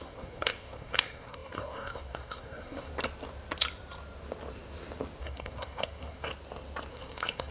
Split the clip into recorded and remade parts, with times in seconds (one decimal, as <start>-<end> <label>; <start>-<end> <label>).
0.0-2.9 remade; 2.9-5.2 recorded; 5.2-6.3 remade; 6.3-6.9 recorded; 6.9-7.5 remade